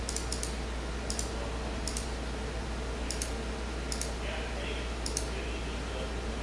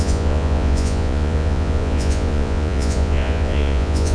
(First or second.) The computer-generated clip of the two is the second